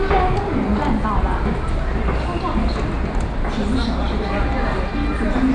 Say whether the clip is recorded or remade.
recorded